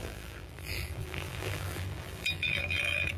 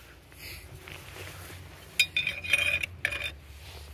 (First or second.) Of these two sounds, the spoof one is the first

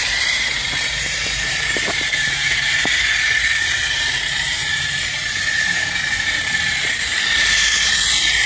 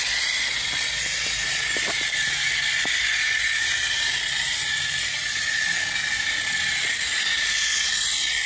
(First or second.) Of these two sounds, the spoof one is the first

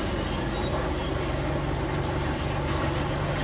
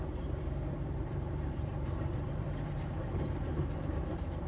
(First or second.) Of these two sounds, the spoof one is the second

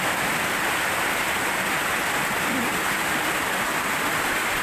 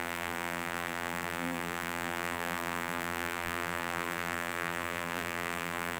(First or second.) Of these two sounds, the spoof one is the second